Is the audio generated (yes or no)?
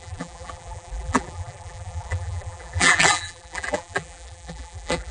yes